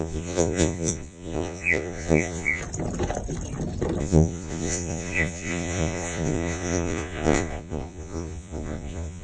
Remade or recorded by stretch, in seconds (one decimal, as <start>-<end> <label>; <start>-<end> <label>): 0.0-2.6 remade; 2.6-4.0 recorded; 4.0-9.2 remade